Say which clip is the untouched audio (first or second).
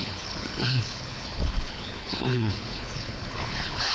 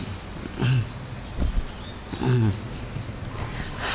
second